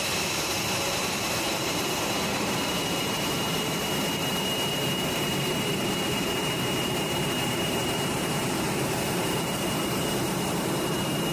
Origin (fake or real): fake